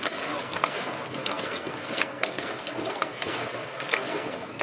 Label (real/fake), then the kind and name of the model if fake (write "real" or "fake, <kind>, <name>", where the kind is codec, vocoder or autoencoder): fake, codec, SNAC